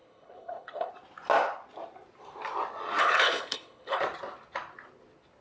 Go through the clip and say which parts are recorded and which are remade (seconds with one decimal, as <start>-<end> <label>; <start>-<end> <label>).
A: 0.0-0.9 remade; 0.9-3.0 recorded; 3.0-4.0 remade; 4.0-5.4 recorded